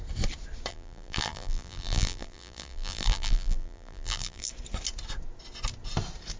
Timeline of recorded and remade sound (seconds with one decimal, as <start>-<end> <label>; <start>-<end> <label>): 0.0-0.7 recorded; 0.7-4.5 remade; 4.5-6.4 recorded